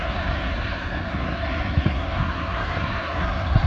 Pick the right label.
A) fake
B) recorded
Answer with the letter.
A